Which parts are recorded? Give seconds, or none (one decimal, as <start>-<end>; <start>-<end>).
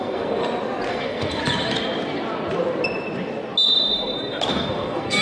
0.4-0.9; 1.4-4.5